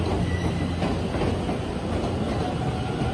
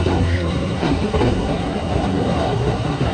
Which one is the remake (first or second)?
second